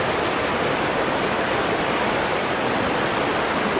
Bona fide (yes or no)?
yes